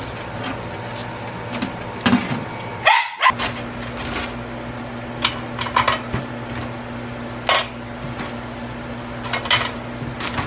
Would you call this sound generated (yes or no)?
no